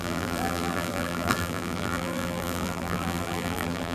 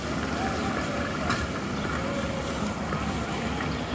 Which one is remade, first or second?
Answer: first